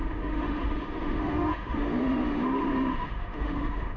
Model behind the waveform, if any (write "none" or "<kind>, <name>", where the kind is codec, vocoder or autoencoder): autoencoder, DAC-VAE